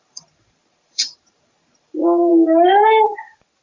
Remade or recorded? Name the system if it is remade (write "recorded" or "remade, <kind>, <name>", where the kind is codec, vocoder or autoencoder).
remade, vocoder, BigVGAN v2